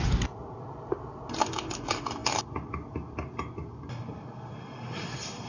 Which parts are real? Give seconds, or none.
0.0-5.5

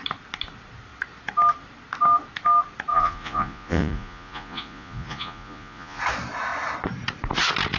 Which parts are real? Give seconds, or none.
0.0-2.9; 6.0-7.8

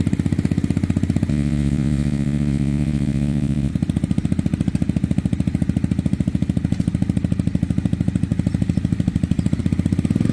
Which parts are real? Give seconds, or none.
0.0-1.3; 3.7-10.3

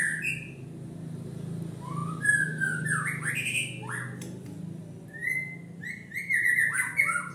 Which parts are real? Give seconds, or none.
0.0-7.3

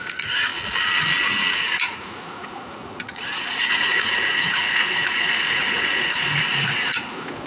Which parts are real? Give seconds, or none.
0.5-1.6

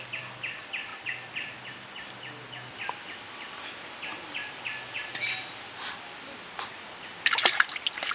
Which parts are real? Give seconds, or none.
0.0-8.1